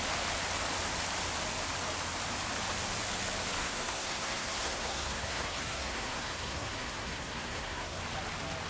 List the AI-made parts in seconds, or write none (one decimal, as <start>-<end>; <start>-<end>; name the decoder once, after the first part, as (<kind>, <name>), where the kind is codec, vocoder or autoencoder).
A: 3.6-8.0 (codec, SNAC)